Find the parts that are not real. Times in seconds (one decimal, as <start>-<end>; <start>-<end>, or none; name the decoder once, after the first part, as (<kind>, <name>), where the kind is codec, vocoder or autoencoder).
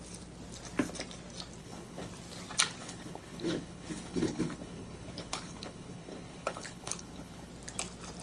1.6-2.1 (codec, HILCodec); 2.8-7.5